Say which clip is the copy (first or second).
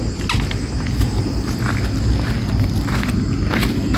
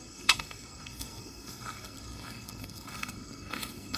second